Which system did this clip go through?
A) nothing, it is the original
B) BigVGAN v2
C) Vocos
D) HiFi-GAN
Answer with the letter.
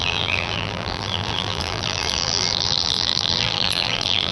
B